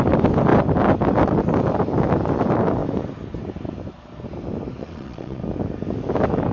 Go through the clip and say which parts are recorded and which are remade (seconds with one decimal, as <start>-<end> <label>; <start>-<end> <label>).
0.0-4.8 recorded; 4.8-5.4 remade; 5.4-6.5 recorded